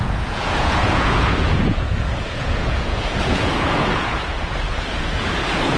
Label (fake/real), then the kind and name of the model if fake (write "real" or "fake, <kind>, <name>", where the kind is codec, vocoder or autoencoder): fake, vocoder, Vocos